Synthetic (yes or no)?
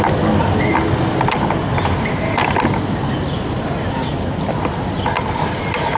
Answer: no